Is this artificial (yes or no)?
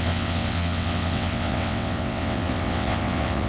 yes